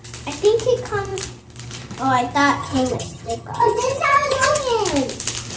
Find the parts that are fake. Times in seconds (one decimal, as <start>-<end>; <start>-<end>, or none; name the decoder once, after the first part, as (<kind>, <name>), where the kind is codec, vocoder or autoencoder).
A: 2.6-4.6 (vocoder, HiFi-GAN)